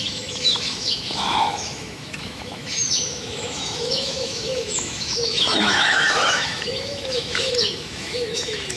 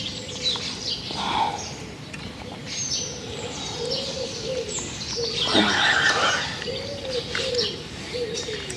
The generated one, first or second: first